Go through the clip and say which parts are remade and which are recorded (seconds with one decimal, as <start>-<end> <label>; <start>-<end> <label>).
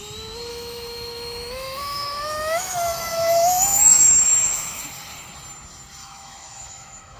0.0-0.5 recorded; 0.5-4.8 remade; 4.8-6.0 recorded; 6.0-7.2 remade